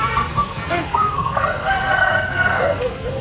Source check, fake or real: fake